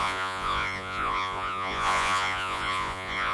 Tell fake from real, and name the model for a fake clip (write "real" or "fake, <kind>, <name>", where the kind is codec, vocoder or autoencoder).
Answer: fake, vocoder, Vocos